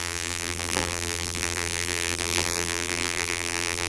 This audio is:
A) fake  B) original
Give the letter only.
A